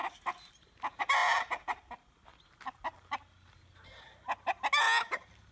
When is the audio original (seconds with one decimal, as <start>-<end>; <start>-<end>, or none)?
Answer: 0.0-5.5